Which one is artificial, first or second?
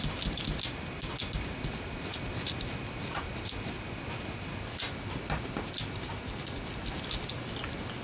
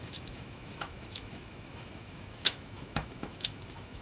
second